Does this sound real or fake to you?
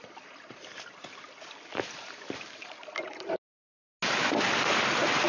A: real